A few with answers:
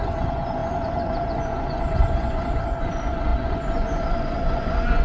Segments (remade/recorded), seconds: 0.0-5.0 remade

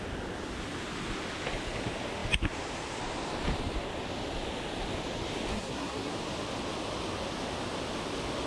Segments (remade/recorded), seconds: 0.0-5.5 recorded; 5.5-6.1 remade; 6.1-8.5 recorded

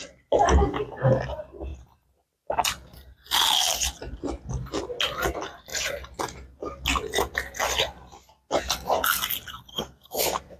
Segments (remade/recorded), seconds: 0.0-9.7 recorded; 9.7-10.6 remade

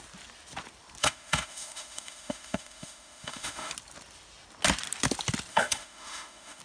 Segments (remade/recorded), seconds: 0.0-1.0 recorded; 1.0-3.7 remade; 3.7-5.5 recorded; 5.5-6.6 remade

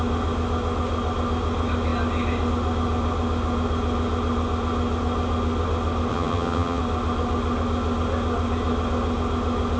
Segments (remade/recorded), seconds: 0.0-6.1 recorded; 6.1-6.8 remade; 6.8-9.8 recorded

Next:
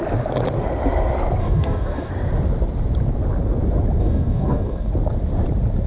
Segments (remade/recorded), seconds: 0.0-1.4 recorded; 1.4-2.1 remade; 2.1-4.0 recorded; 4.0-4.9 remade; 4.9-5.9 recorded

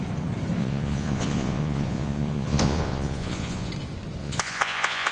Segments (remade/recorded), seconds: 0.0-0.6 recorded; 0.6-3.7 remade; 3.7-4.2 recorded; 4.2-5.1 remade

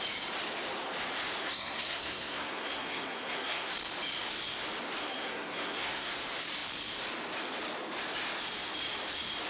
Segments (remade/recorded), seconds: 0.0-1.4 recorded; 1.4-3.7 remade; 3.7-5.0 recorded; 5.0-6.1 remade; 6.1-9.5 recorded